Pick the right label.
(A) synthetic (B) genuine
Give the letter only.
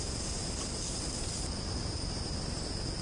B